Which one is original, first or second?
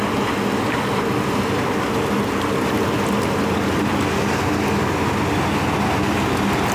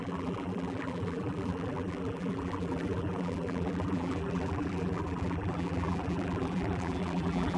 first